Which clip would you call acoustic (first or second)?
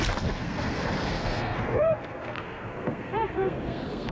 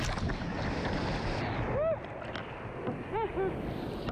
second